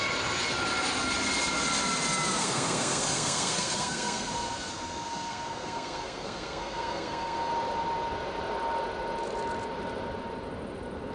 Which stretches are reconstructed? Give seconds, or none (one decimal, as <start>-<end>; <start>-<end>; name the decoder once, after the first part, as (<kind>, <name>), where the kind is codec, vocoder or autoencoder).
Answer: 2.4-7.5 (codec, SNAC)